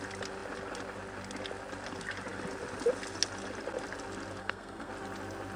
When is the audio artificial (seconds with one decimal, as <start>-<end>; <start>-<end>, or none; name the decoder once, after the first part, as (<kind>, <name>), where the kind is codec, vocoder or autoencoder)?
4.4-4.9 (codec, SNAC)